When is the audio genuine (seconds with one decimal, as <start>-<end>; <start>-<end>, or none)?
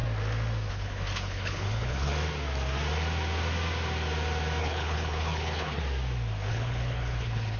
0.0-0.7; 2.1-4.6; 5.8-6.5